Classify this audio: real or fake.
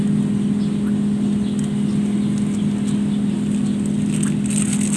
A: real